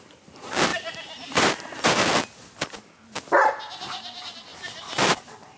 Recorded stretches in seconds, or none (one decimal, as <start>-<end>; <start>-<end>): 0.0-0.7; 1.4-5.6